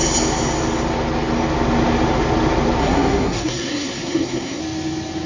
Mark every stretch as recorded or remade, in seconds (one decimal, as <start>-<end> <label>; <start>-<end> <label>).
0.0-2.8 recorded; 2.8-4.6 remade; 4.6-5.3 recorded